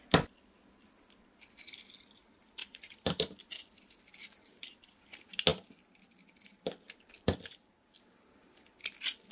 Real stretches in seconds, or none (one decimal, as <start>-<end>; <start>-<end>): 0.0-2.6; 4.9-5.5; 8.0-9.3

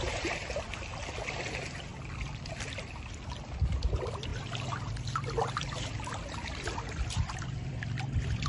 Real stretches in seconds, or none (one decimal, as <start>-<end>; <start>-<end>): 0.0-1.9; 2.8-4.3; 7.7-8.5

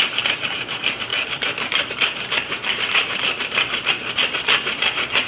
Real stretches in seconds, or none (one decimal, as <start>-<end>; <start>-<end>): none

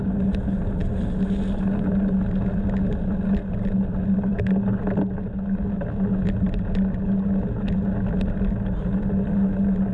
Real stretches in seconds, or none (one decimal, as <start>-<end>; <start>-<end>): 0.0-9.9

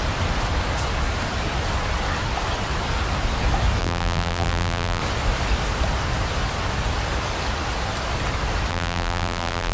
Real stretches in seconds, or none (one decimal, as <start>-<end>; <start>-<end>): 0.0-3.8; 5.0-8.7

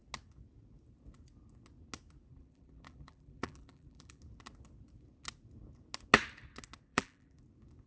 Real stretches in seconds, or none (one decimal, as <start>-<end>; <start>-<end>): 0.0-2.3; 4.2-6.9; 7.4-7.9

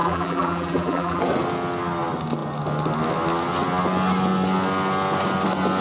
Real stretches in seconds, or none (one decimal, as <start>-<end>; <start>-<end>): 1.2-5.8

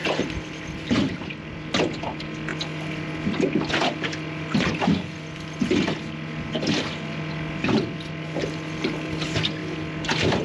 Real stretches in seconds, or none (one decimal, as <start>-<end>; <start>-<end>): 1.5-10.4